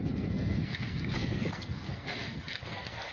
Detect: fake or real fake